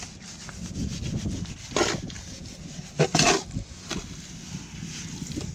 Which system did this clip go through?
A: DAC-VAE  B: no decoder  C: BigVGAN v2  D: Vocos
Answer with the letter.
B